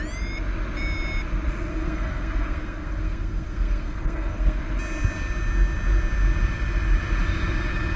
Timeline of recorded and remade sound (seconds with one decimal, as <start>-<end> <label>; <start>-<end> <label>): 0.0-1.7 recorded; 1.7-4.6 remade; 4.6-8.0 recorded